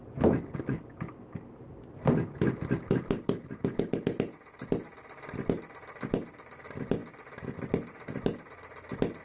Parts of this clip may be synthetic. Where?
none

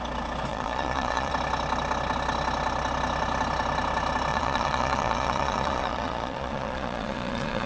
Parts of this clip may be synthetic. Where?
0.5-1.3 (vocoder, Vocos); 4.3-7.7

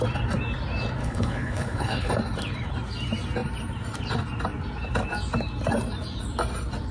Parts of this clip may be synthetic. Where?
1.0-2.1 (codec, HILCodec)

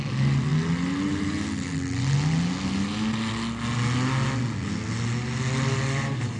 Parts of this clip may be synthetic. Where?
none

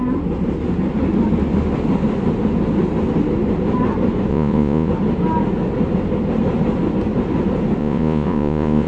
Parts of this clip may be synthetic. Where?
4.3-4.9 (vocoder, Vocos); 7.8-8.9

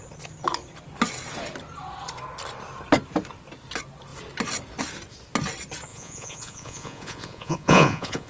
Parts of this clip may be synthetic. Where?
5.9-8.3 (vocoder, Vocos)

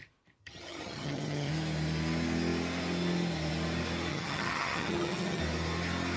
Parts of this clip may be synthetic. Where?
0.4-1.5 (vocoder, HiFi-GAN); 4.1-5.4